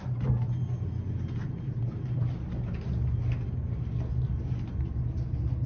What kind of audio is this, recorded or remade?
recorded